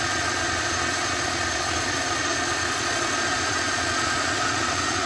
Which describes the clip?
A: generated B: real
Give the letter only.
A